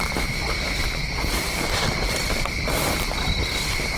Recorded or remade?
remade